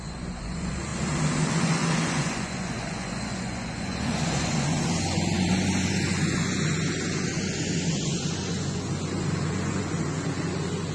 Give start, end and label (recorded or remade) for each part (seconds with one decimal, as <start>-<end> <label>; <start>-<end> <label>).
0.0-0.9 remade; 0.9-1.5 recorded; 1.5-10.9 remade